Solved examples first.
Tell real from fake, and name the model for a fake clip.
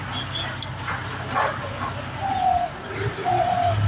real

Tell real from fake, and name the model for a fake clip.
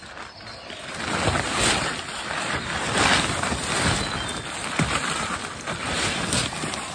real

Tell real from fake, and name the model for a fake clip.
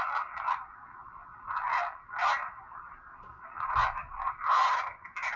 real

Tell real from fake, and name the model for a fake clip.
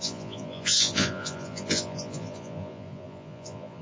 fake, vocoder, Vocos